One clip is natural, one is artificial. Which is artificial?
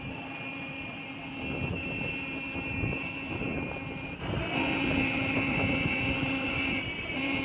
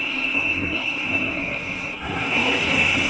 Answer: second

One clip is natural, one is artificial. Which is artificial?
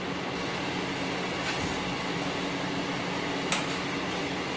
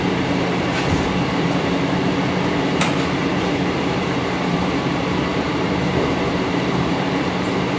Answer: second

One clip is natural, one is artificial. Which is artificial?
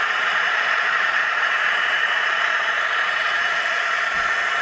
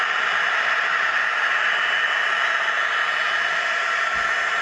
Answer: first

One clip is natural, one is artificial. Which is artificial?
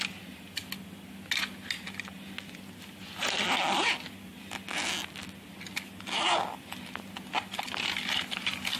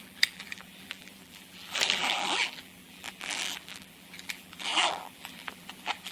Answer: second